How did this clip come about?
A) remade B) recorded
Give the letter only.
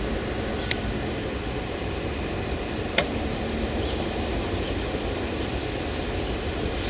B